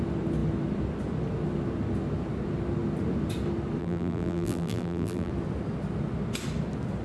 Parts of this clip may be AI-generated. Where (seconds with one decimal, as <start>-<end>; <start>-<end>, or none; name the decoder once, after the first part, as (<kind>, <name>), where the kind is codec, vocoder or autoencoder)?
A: 3.8-5.3 (vocoder, BigVGAN v2)